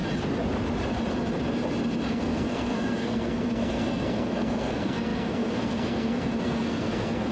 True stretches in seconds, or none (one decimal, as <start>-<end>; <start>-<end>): 0.0-2.1

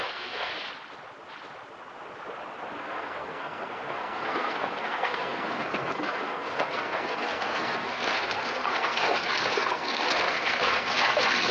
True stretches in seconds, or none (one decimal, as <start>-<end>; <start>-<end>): 0.5-2.8